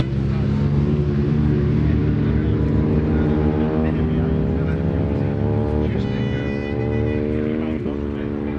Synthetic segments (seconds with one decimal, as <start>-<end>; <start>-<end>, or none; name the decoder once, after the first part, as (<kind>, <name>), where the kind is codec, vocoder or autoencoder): none